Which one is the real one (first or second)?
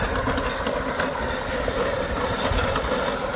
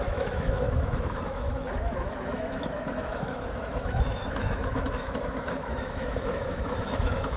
first